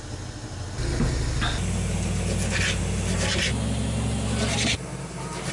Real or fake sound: real